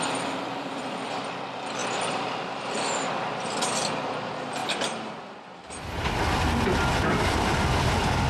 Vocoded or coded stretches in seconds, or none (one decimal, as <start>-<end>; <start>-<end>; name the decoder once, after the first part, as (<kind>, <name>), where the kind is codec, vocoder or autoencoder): 0.0-8.3 (vocoder, BigVGAN v2)